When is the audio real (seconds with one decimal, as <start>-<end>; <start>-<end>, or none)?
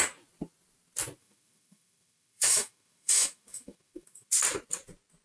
0.0-1.2; 4.3-5.2